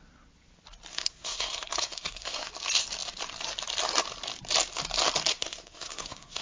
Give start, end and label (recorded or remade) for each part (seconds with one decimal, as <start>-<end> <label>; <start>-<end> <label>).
0.0-0.9 recorded; 0.9-2.5 remade; 2.5-5.3 recorded; 5.3-6.4 remade